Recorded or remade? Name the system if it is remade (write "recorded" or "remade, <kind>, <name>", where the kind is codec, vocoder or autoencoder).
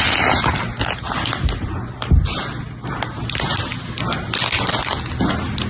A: recorded